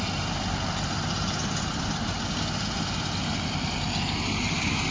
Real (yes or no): yes